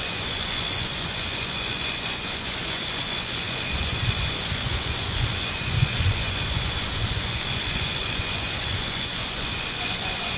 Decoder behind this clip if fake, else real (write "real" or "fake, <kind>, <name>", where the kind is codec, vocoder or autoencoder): fake, vocoder, Vocos